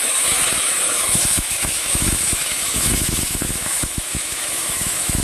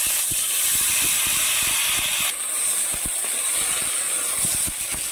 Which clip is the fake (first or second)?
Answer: first